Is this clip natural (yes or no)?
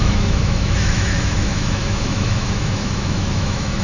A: no